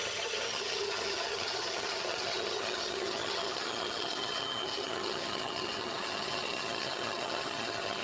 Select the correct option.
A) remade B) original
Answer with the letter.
A